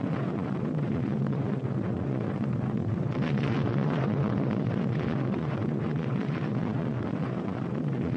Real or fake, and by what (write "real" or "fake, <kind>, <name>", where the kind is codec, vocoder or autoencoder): fake, vocoder, WaveNeXt